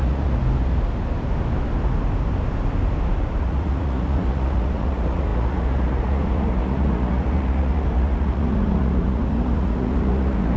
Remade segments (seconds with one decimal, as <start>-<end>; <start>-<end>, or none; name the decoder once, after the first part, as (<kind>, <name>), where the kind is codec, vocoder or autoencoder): 0.0-0.4 (vocoder, Vocos); 3.4-10.6